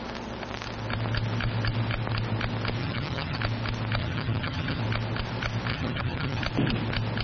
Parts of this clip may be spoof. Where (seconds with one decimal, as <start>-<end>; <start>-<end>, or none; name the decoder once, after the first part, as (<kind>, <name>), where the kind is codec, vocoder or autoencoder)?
2.8-3.4 (vocoder, HiFi-GAN); 4.0-4.8; 5.7-6.4